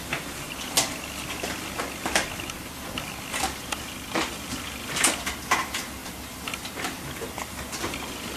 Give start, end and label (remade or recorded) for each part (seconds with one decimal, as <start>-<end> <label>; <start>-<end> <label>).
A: 0.0-8.4 recorded